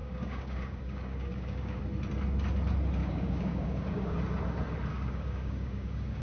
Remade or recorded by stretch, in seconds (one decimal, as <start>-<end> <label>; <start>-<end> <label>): 0.0-1.8 remade; 1.8-3.0 recorded; 3.0-4.2 remade; 4.2-4.9 recorded; 4.9-6.2 remade